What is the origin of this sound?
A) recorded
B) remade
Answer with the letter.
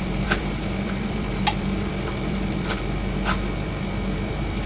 B